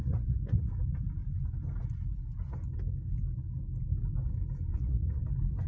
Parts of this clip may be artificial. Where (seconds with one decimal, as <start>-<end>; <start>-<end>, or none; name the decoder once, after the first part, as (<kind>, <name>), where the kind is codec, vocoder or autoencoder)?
0.0-0.7 (vocoder, Vocos); 4.7-5.3